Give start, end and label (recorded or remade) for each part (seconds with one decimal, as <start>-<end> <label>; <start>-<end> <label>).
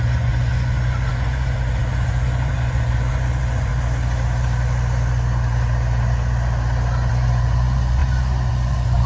0.0-3.7 remade; 3.7-7.1 recorded; 7.1-8.0 remade; 8.0-8.5 recorded; 8.5-9.1 remade